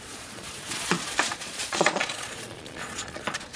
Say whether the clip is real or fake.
fake